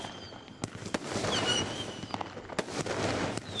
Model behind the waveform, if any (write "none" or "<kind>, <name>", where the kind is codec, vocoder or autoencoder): none